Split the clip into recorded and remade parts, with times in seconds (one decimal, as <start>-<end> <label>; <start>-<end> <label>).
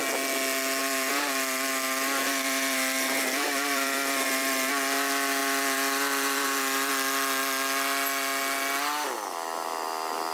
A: 0.0-0.8 recorded; 0.8-4.7 remade; 4.7-5.4 recorded; 5.4-6.9 remade; 6.9-10.3 recorded